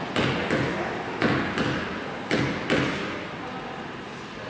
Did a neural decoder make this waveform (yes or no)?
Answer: no